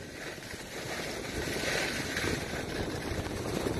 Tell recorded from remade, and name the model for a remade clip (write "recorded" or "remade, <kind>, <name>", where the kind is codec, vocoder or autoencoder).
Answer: recorded